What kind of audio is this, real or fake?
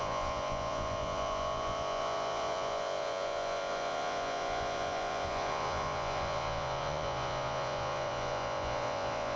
fake